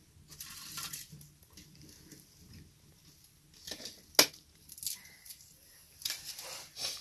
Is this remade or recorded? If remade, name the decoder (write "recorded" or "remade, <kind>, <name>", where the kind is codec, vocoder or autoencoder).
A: recorded